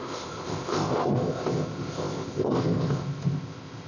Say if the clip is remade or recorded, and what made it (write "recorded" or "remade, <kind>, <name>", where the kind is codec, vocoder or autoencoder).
remade, codec, ZipCodec